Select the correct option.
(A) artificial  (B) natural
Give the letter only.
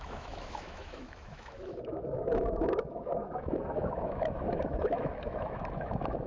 A